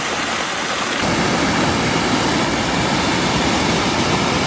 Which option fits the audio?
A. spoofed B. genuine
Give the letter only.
B